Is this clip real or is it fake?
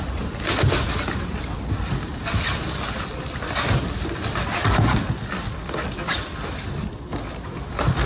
real